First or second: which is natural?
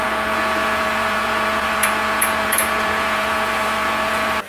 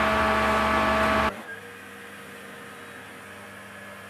second